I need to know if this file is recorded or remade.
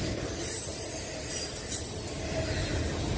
recorded